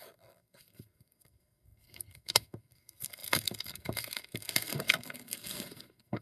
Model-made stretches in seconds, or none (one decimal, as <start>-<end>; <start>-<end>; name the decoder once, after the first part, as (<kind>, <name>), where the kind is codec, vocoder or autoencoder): 0.0-6.2 (codec, SNAC)